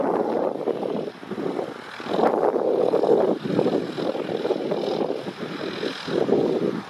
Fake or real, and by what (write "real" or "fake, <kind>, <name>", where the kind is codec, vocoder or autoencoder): real